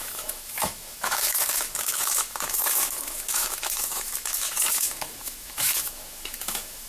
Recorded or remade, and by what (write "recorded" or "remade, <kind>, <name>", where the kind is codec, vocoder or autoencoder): remade, autoencoder, DAC-VAE